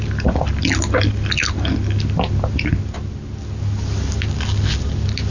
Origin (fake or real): real